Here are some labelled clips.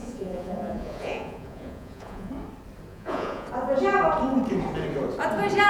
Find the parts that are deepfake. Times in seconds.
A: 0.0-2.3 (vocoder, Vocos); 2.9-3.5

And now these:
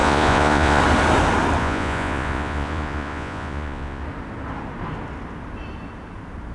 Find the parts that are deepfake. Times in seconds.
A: 0.0-0.8 (vocoder, Vocos); 1.6-4.0

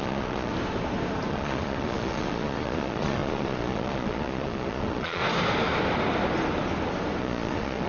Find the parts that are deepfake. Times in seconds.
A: 0.0-0.5 (vocoder, Vocos); 1.3-5.2; 7.2-7.9

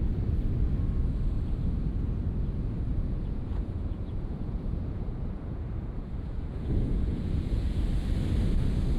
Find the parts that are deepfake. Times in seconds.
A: 2.9-7.8 (vocoder, Vocos)